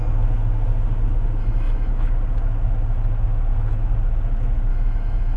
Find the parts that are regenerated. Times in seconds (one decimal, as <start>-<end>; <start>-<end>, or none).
1.4-1.9; 4.7-5.4